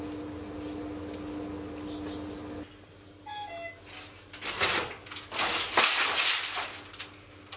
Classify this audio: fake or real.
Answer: real